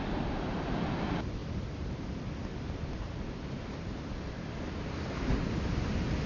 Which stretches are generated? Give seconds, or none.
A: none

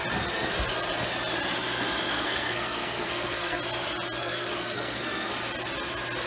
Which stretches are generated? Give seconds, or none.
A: 2.1-3.6 (codec, SNAC); 4.2-5.3

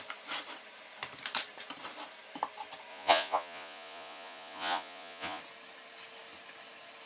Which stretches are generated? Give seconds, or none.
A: 2.9-5.4 (vocoder, Vocos)

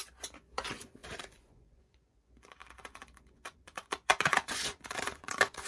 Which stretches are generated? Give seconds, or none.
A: 0.0-5.7 (vocoder, Vocos)

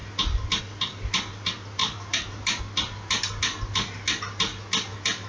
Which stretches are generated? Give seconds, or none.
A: 1.8-2.6 (vocoder, BigVGAN v2)